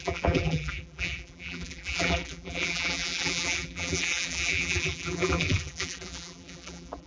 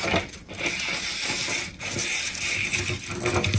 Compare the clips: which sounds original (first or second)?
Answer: second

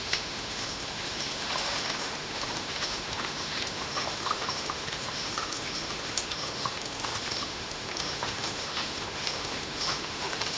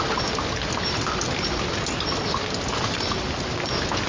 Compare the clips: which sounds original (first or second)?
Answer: second